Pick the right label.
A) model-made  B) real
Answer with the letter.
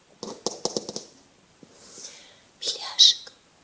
B